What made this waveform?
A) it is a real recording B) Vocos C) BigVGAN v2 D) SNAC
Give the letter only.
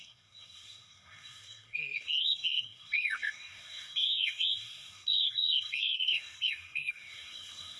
D